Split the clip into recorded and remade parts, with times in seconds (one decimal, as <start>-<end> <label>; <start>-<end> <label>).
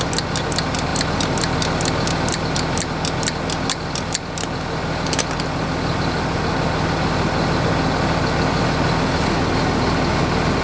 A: 0.0-10.6 recorded